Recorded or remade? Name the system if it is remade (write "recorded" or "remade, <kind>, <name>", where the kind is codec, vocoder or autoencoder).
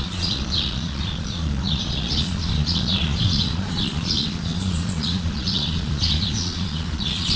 remade, vocoder, Vocos